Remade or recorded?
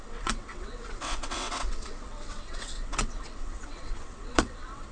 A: remade